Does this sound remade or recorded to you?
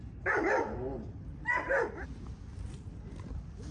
recorded